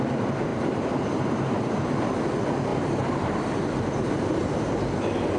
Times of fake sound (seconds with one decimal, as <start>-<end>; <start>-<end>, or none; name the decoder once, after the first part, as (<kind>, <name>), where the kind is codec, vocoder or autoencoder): 0.5-1.8 (vocoder, BigVGAN v2); 2.7-4.5